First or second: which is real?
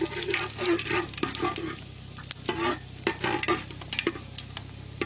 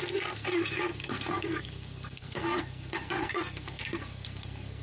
first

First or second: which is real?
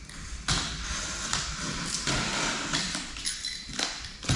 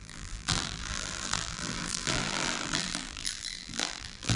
first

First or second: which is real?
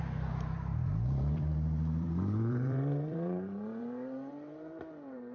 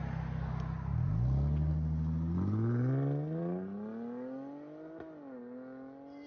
second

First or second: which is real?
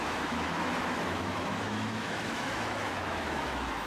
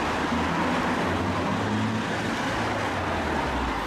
second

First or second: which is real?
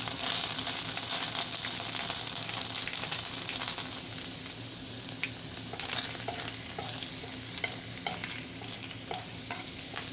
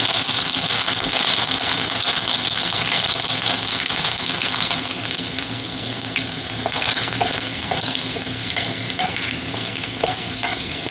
first